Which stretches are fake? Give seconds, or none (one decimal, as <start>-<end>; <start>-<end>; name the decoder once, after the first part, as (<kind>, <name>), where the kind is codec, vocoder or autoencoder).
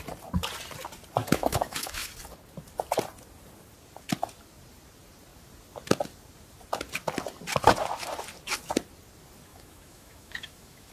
1.2-2.1 (autoencoder, DAC-VAE); 9.5-10.9